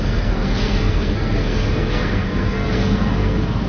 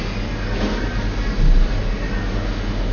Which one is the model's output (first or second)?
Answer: first